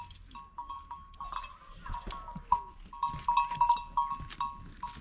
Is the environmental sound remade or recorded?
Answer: recorded